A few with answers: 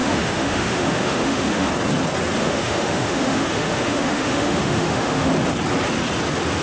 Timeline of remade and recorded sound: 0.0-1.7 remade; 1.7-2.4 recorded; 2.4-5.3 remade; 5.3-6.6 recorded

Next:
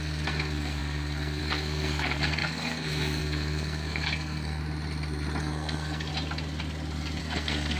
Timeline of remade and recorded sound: 0.0-4.6 remade; 4.6-5.4 recorded; 5.4-6.1 remade; 6.1-7.2 recorded; 7.2-7.8 remade

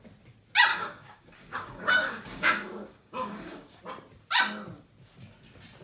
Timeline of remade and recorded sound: 0.0-0.7 recorded; 0.7-3.8 remade; 3.8-5.8 recorded

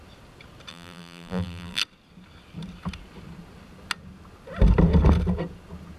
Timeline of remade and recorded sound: 0.0-0.7 recorded; 0.7-1.8 remade; 1.8-6.0 recorded

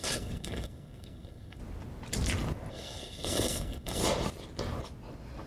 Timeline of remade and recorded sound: 0.0-1.6 remade; 1.6-2.7 recorded; 2.7-4.0 remade; 4.0-5.5 recorded

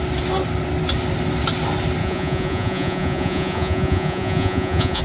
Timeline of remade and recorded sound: 0.0-2.0 recorded; 2.0-5.0 remade

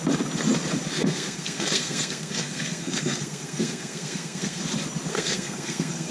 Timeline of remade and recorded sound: 0.0-0.9 recorded; 0.9-4.6 remade; 4.6-5.1 recorded; 5.1-6.1 remade

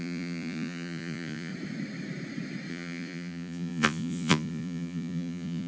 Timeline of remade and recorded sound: 0.0-1.5 remade; 1.5-2.7 recorded; 2.7-5.7 remade